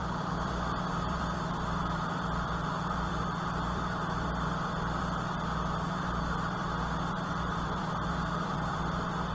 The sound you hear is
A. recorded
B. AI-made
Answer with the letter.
B